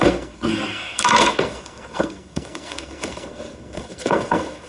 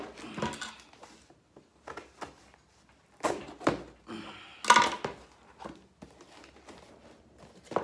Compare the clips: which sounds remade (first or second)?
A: first